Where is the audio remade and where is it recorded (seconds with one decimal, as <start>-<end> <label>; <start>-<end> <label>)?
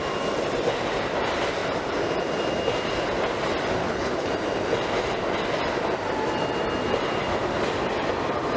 0.0-3.8 recorded; 3.8-4.3 remade; 4.3-8.6 recorded